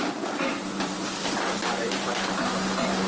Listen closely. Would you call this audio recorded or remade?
remade